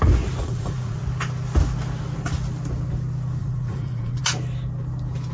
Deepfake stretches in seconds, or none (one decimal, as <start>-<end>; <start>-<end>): 0.4-1.0; 3.4-4.2